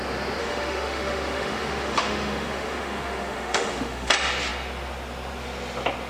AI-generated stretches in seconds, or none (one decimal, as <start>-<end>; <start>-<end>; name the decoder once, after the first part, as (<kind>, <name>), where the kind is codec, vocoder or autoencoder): 0.4-4.1 (autoencoder, DAC-VAE)